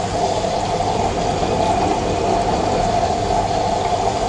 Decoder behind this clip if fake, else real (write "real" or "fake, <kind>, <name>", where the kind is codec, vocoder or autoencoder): real